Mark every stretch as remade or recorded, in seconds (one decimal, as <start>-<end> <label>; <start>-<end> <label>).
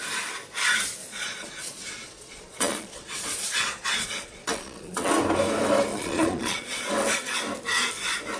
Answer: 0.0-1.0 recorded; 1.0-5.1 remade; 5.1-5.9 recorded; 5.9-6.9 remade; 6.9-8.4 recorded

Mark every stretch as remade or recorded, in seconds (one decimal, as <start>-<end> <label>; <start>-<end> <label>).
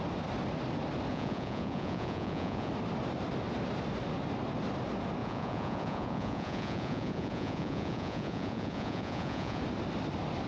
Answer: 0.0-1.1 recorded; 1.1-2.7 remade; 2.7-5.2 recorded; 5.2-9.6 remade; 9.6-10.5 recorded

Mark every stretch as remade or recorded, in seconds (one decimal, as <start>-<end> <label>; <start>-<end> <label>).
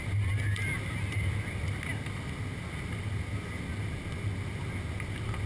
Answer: 0.0-5.5 recorded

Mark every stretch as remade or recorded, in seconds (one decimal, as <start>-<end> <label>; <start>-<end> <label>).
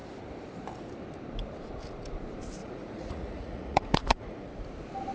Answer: 0.0-2.6 recorded; 2.6-4.5 remade; 4.5-5.1 recorded